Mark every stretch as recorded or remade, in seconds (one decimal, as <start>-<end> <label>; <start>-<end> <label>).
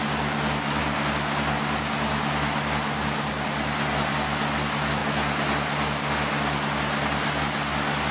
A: 0.0-8.1 recorded